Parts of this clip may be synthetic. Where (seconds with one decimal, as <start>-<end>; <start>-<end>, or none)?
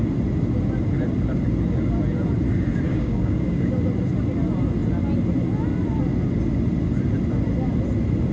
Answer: 2.9-3.7